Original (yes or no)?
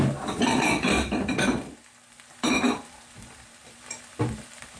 no